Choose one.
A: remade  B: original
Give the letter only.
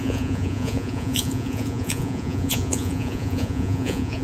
A